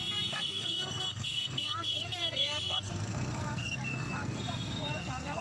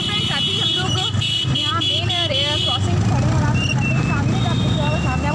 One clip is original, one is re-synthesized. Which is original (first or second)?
second